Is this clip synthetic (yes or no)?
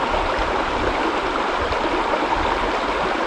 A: no